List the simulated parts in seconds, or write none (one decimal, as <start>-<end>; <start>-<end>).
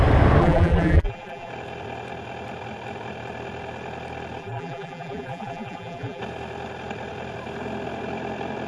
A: 0.4-1.5; 4.4-6.2